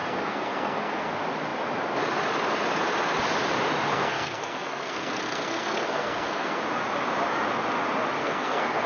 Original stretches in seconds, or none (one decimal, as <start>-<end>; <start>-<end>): 1.1-3.9; 6.6-8.2